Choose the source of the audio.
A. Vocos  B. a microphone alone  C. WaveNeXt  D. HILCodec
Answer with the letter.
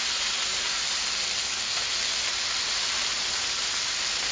B